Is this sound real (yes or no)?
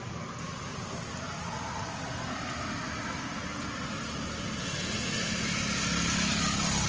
yes